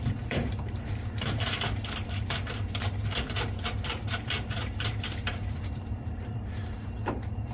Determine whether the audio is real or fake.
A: fake